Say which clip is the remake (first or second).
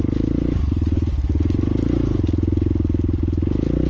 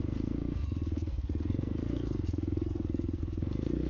second